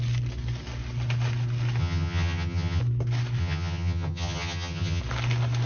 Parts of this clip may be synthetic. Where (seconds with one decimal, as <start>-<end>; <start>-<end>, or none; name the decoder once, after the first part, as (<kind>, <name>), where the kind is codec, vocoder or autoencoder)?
1.8-2.8 (vocoder, HiFi-GAN); 3.4-5.0